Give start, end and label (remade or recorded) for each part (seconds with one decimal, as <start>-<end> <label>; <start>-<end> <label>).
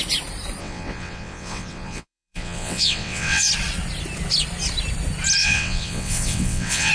0.0-0.6 recorded; 0.6-3.5 remade; 3.5-5.4 recorded; 5.4-6.9 remade